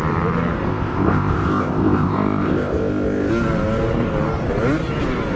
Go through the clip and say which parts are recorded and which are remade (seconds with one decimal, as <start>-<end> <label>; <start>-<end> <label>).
0.0-0.7 recorded; 0.7-3.3 remade; 3.3-5.4 recorded